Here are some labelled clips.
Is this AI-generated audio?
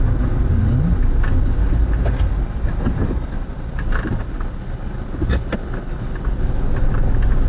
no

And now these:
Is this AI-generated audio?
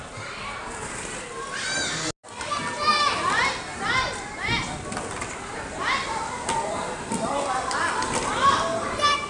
no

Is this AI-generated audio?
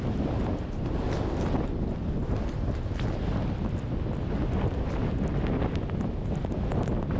no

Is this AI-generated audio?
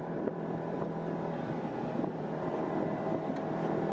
yes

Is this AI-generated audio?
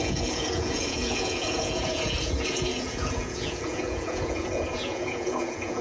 yes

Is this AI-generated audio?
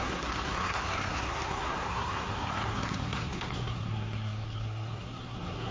yes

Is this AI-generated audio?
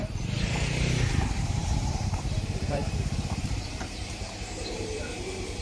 yes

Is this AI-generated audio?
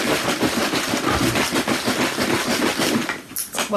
no